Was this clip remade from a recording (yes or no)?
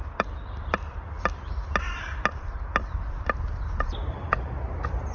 no